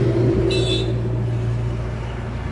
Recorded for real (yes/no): yes